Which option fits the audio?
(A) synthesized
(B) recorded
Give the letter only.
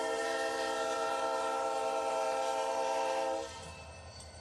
A